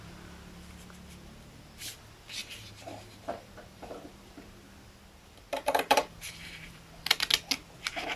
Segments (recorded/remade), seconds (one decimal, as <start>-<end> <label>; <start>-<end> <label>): 0.0-2.4 recorded; 2.4-4.6 remade; 4.6-5.5 recorded; 5.5-6.9 remade; 6.9-8.2 recorded